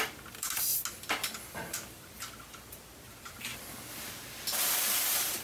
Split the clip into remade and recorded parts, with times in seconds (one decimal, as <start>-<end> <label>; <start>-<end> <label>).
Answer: 0.0-0.7 remade; 0.7-1.4 recorded; 1.4-3.5 remade; 3.5-4.6 recorded; 4.6-5.4 remade